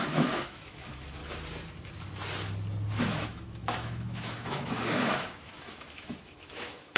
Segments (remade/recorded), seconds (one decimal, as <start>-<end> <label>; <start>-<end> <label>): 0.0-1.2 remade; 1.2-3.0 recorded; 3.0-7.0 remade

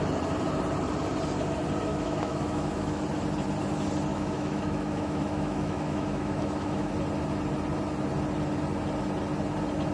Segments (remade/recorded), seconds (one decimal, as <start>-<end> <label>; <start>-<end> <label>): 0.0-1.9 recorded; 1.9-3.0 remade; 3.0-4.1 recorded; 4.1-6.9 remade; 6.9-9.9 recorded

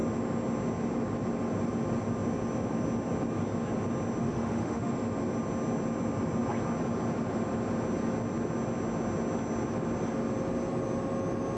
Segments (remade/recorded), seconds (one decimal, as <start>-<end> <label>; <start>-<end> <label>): 0.0-4.2 recorded; 4.2-4.9 remade; 4.9-11.6 recorded

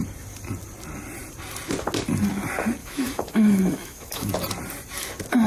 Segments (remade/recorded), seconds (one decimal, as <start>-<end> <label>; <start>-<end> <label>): 0.0-2.8 recorded; 2.8-4.3 remade; 4.3-5.5 recorded

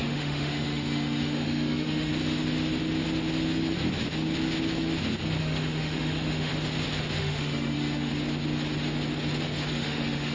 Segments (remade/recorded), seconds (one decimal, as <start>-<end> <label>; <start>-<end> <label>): 0.0-2.1 remade; 2.1-5.4 recorded; 5.4-6.5 remade; 6.5-7.2 recorded; 7.2-8.1 remade; 8.1-9.7 recorded; 9.7-10.3 remade

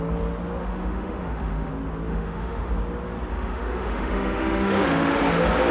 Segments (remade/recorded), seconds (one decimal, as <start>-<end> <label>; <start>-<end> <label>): 0.0-0.6 recorded; 0.6-1.7 remade; 1.7-2.1 recorded; 2.1-2.7 remade; 2.7-3.3 recorded; 3.3-5.2 remade; 5.2-5.7 recorded

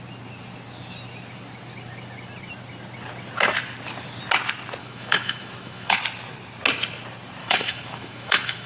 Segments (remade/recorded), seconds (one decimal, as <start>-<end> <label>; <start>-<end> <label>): 0.0-4.8 recorded; 4.8-6.0 remade; 6.0-7.4 recorded; 7.4-8.7 remade